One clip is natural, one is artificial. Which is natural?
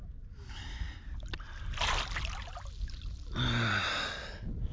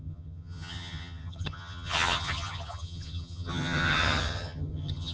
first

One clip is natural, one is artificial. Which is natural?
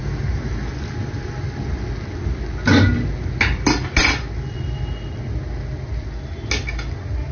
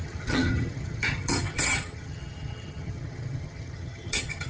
first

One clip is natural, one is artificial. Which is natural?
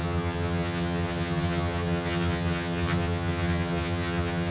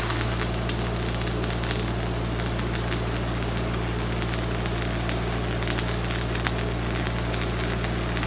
second